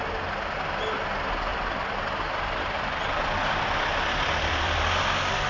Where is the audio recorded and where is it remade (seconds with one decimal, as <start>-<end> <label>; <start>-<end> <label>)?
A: 0.0-1.5 recorded; 1.5-4.8 remade; 4.8-5.5 recorded